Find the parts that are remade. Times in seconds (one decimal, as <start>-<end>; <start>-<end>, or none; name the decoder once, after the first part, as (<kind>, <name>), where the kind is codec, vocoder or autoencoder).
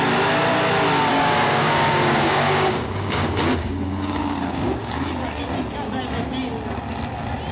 1.1-5.1 (codec, DAC)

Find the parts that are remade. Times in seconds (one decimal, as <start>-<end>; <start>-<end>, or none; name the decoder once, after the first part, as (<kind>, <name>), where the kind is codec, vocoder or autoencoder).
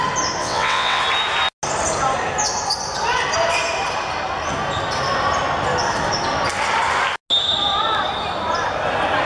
0.4-1.0 (vocoder, WaveNeXt)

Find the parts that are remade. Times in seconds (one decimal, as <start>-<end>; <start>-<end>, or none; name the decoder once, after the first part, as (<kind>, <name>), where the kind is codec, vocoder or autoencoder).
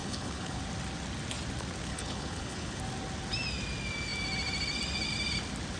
0.0-0.6 (codec, HILCodec); 1.9-2.8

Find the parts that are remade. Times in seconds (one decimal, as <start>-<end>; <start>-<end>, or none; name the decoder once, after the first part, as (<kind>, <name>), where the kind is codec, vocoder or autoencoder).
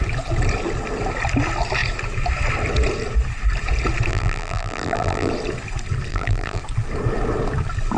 4.1-5.3 (vocoder, BigVGAN v2); 6.1-6.6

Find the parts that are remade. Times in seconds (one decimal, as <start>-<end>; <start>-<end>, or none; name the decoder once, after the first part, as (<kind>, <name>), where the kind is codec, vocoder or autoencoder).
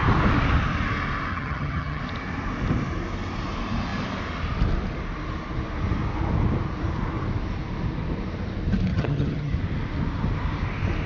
1.3-2.0 (vocoder, HiFi-GAN); 8.9-9.6